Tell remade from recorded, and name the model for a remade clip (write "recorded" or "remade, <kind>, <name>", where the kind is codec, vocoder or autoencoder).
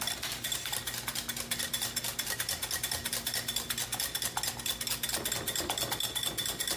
recorded